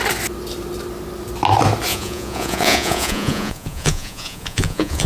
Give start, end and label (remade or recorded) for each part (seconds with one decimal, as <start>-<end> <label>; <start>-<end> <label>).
0.0-1.9 recorded; 1.9-5.1 remade